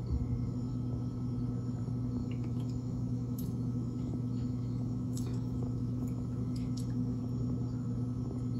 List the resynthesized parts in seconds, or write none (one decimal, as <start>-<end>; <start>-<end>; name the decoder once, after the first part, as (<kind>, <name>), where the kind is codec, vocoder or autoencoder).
2.2-7.2 (autoencoder, DAC-VAE)